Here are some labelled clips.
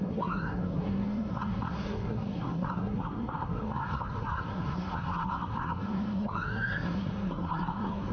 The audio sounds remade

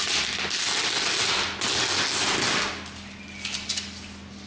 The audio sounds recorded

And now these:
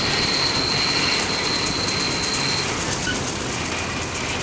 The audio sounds recorded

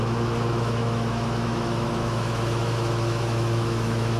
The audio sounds remade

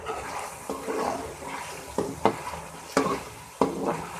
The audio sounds recorded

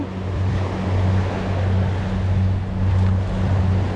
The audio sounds recorded